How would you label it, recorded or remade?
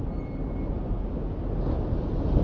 recorded